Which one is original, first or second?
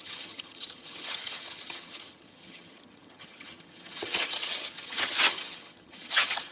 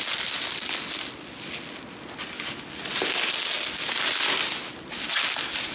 second